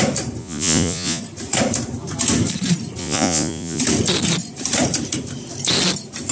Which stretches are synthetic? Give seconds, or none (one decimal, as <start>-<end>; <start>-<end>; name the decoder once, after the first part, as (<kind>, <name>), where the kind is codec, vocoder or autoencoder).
0.4-1.2 (vocoder, Vocos); 3.0-3.8